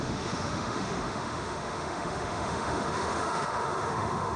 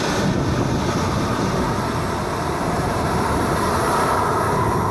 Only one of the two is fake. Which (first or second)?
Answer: first